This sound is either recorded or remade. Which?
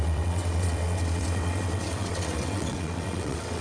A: remade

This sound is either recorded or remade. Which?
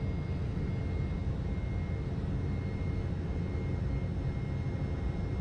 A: recorded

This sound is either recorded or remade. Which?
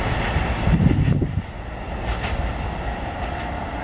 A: remade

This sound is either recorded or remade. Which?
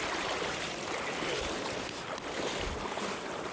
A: recorded